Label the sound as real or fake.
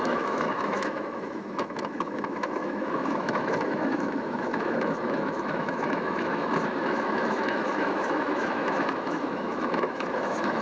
fake